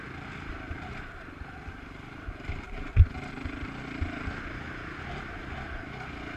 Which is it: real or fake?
real